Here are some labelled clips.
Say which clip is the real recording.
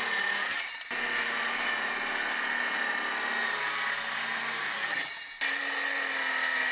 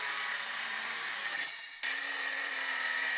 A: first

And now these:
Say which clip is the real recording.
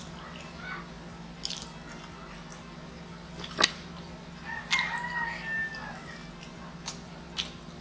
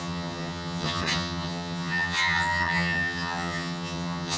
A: first